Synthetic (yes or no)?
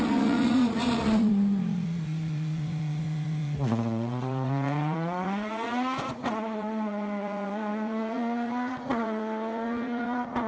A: yes